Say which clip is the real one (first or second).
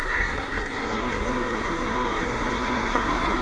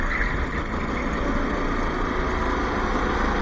second